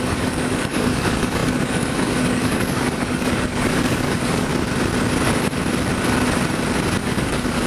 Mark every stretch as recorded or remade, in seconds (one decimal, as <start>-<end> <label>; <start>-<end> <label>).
0.0-4.5 remade; 4.5-7.0 recorded; 7.0-7.7 remade